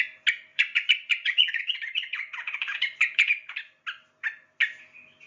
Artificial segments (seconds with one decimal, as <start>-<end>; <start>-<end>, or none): 0.5-3.5